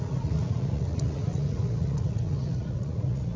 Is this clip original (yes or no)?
no